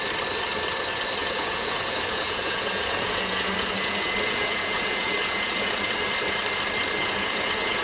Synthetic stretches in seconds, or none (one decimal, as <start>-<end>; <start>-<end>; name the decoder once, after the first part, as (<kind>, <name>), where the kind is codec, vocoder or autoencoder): 1.2-5.9 (vocoder, Vocos); 7.0-7.8